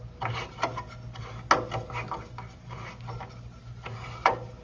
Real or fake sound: real